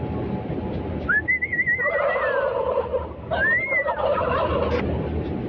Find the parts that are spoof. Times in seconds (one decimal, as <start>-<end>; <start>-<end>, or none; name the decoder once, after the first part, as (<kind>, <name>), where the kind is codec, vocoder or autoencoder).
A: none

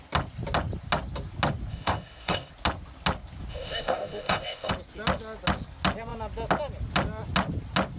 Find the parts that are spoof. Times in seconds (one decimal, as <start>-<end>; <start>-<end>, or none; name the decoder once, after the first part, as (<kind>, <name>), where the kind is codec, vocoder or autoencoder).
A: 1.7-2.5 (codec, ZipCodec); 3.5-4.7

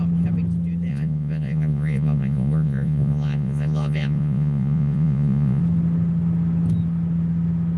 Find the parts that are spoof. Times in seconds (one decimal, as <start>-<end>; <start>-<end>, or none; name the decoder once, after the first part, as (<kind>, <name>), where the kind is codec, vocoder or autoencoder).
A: 0.9-5.6 (vocoder, Vocos)

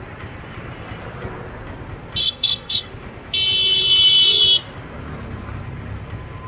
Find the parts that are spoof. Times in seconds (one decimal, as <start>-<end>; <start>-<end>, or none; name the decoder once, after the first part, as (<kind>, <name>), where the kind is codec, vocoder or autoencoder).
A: 2.2-2.9 (codec, SNAC)

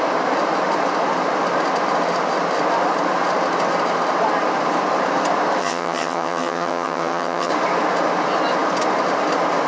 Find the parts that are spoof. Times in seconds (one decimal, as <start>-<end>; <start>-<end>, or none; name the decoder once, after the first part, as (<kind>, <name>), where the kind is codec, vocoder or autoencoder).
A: 5.6-7.5 (vocoder, HiFi-GAN)